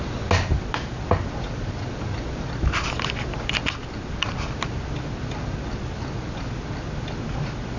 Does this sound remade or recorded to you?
recorded